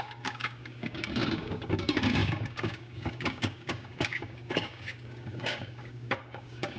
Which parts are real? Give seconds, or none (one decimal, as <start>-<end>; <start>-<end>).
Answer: none